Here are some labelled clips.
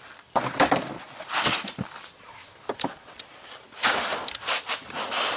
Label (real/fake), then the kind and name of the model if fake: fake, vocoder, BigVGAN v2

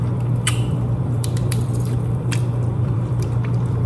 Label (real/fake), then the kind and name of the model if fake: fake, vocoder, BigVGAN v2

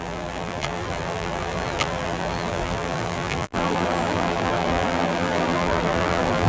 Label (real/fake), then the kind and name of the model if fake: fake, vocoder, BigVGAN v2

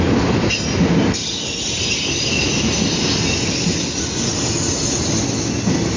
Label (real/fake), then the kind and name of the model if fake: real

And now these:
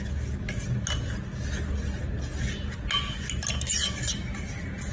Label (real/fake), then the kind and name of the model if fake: real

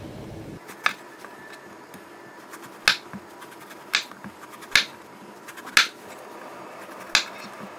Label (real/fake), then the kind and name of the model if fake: real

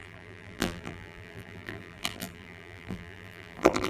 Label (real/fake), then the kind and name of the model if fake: fake, vocoder, BigVGAN v2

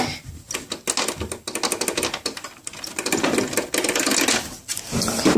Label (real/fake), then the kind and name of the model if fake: real